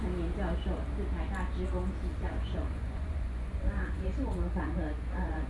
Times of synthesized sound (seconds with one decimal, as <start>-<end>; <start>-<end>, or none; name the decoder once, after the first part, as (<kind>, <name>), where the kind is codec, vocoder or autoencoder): 2.1-5.5 (vocoder, Vocos)